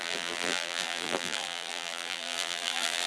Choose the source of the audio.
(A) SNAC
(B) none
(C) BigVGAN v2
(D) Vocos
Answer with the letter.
C